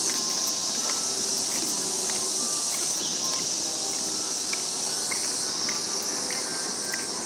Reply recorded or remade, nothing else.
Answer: recorded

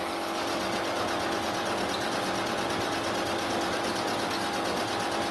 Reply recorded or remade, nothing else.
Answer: recorded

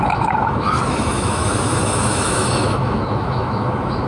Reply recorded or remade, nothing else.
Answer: remade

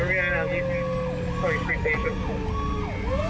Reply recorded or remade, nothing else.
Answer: recorded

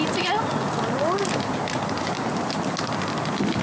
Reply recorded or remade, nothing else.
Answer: recorded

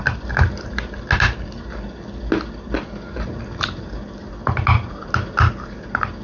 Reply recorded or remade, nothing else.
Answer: recorded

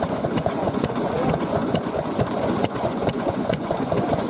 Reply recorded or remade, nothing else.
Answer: remade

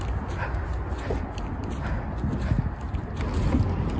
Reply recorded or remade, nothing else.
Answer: recorded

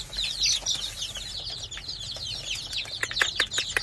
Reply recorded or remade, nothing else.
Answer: recorded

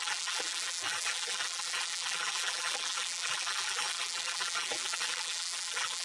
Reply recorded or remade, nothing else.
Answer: remade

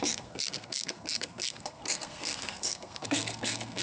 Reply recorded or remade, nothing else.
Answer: remade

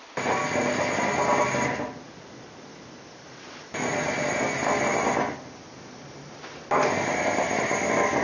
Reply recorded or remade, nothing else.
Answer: recorded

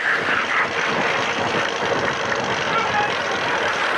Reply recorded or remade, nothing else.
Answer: recorded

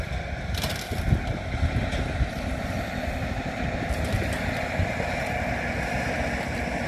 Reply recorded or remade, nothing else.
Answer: recorded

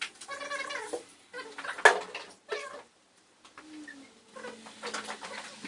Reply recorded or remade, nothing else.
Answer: recorded